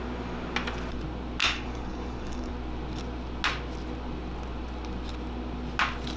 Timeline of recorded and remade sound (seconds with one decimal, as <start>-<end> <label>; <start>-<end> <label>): 0.0-1.4 recorded; 1.4-2.5 remade; 2.5-6.2 recorded